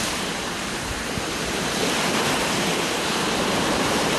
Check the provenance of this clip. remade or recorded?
remade